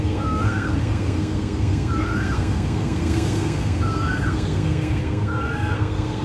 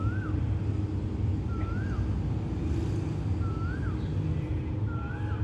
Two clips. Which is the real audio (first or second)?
second